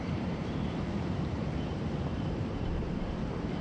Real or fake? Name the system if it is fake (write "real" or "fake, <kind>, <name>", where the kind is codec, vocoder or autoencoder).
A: fake, vocoder, BigVGAN v2